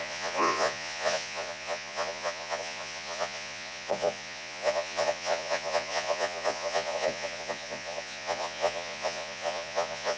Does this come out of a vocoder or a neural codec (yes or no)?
yes